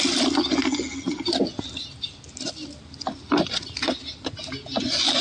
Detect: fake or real real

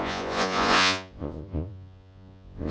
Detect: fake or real fake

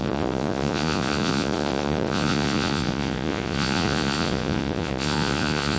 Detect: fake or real fake